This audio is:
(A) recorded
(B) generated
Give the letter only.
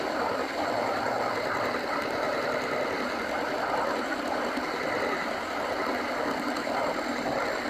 A